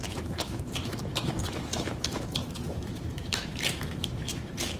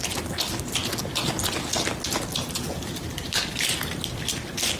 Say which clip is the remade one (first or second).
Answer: first